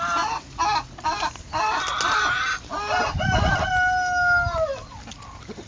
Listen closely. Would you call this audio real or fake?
real